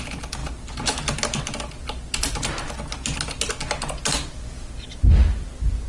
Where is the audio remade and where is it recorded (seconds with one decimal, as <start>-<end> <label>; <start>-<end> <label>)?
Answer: 0.0-5.9 recorded